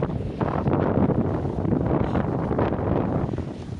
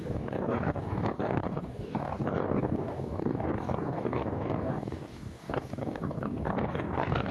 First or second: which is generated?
second